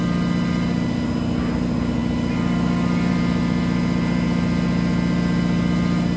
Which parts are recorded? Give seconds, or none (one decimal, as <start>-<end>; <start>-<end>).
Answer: 0.0-6.2